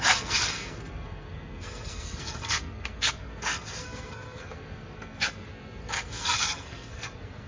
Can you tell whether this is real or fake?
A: fake